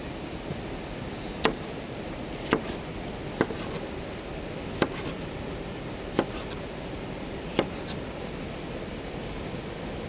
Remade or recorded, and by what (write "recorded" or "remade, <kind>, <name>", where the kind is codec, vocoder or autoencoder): recorded